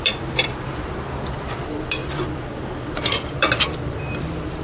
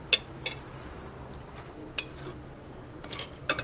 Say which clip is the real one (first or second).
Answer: second